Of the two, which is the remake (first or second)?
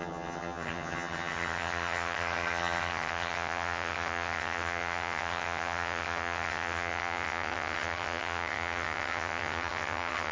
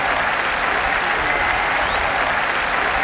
first